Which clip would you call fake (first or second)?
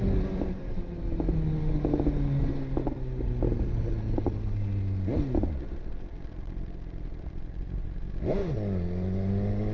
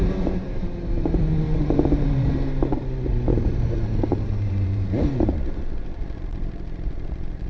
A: second